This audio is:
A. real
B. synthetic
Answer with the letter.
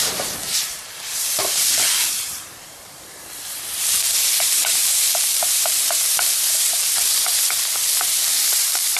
B